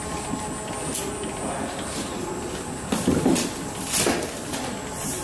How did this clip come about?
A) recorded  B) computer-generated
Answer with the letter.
A